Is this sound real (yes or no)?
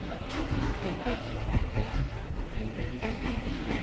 no